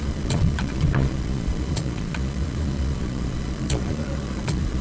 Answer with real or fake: fake